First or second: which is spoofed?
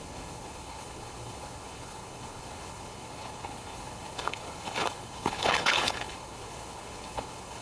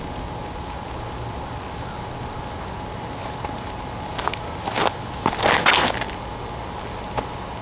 first